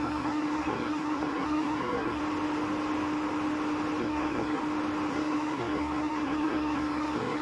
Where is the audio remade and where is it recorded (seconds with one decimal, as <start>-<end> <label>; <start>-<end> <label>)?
0.0-2.2 remade; 2.2-4.0 recorded; 4.0-4.6 remade; 4.6-5.1 recorded; 5.1-7.4 remade